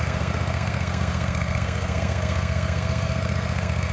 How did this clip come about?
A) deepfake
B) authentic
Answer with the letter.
A